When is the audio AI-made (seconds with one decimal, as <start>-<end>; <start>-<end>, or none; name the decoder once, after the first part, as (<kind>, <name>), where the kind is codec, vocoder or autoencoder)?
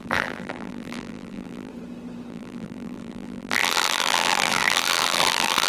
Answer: 0.0-1.7 (vocoder, BigVGAN v2); 2.3-5.7